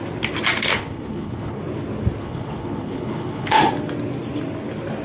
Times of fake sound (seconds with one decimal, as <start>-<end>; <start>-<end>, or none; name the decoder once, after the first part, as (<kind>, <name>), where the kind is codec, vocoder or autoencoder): 0.7-1.6 (codec, HILCodec); 2.2-3.6